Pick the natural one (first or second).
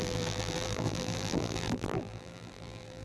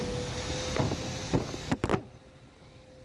second